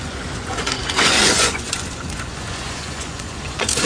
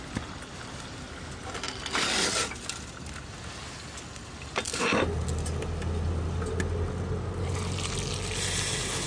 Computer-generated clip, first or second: first